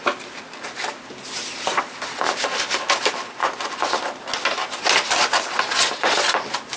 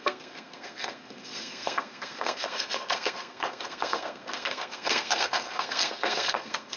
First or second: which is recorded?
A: first